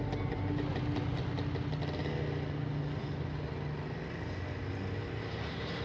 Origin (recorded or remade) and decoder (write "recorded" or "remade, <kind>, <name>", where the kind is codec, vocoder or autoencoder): recorded